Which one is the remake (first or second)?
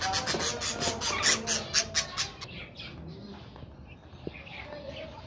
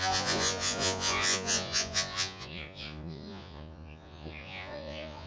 second